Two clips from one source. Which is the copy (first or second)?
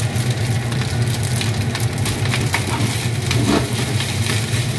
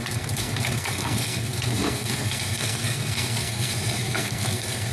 second